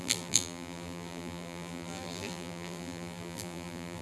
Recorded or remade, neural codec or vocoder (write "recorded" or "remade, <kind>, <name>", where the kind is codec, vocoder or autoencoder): remade, vocoder, BigVGAN v2